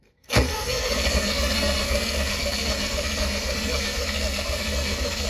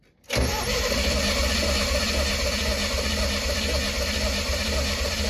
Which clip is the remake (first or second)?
first